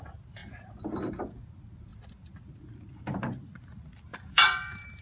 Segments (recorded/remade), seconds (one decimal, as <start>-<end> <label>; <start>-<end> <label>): 0.0-4.1 recorded; 4.1-5.0 remade